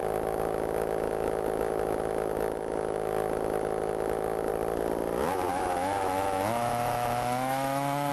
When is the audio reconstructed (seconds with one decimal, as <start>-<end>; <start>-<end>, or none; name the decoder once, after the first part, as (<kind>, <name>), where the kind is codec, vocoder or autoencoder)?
0.0-4.5 (autoencoder, DAC-VAE); 5.5-8.1